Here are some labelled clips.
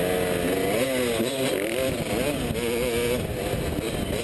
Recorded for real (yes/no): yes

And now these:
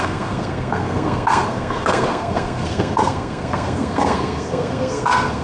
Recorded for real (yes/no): no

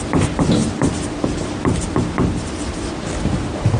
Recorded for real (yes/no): yes